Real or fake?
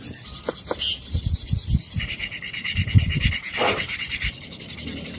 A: fake